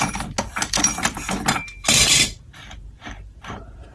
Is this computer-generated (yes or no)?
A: yes